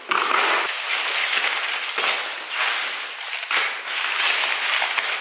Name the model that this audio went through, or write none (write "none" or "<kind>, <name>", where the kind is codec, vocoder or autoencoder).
none